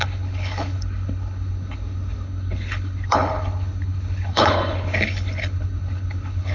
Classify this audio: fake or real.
fake